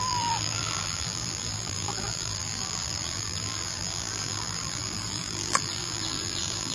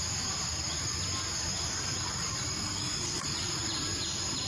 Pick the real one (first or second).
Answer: second